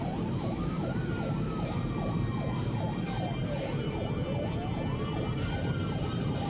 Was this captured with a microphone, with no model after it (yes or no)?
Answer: no